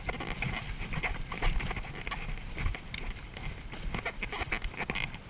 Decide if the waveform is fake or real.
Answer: real